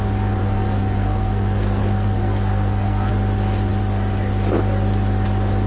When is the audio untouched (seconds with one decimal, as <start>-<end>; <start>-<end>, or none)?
0.0-0.4; 3.1-5.7